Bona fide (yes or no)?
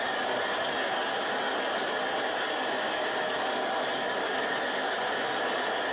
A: yes